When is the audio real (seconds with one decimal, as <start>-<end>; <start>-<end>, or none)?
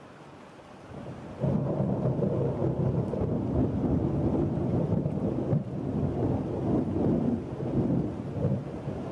0.0-9.1